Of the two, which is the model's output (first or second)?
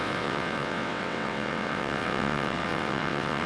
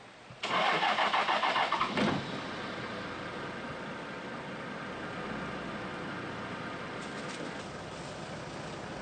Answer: first